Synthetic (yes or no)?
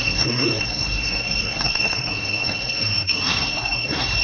yes